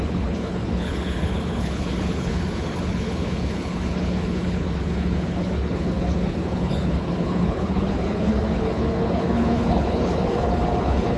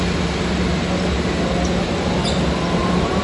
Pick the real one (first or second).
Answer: second